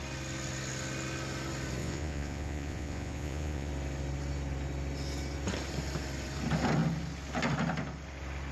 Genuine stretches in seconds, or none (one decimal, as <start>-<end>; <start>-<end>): 0.0-1.8; 3.7-8.5